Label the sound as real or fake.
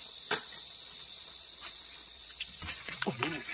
fake